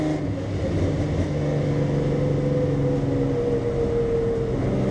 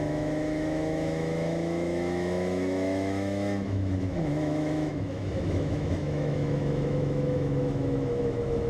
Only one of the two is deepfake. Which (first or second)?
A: second